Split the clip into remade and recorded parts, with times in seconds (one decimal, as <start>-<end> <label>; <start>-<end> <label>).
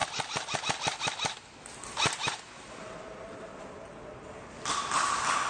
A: 0.0-2.2 recorded; 2.2-2.9 remade; 2.9-5.5 recorded